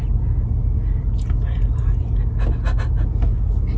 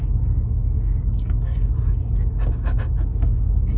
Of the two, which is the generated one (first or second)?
second